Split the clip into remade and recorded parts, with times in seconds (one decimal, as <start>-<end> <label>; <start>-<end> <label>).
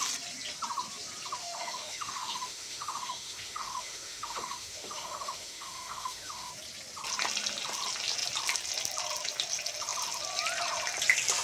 0.0-1.4 recorded; 1.4-6.5 remade; 6.5-11.4 recorded